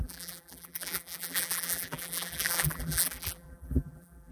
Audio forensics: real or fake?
fake